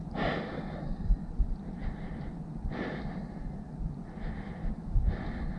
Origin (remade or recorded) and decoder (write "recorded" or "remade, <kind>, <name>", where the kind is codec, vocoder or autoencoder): recorded